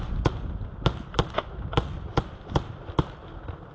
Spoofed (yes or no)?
no